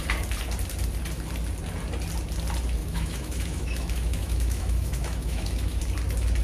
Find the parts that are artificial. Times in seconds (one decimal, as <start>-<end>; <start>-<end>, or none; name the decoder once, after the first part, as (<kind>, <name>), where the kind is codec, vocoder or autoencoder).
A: 2.8-5.8 (autoencoder, DAC-VAE)